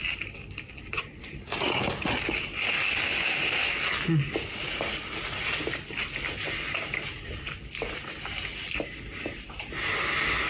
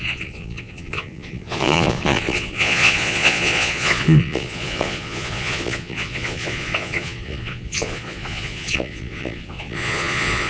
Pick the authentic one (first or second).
first